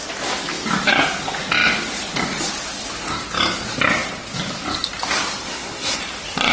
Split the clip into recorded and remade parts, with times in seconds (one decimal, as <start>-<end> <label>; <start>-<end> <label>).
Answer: 0.0-5.5 recorded; 5.5-6.0 remade; 6.0-6.5 recorded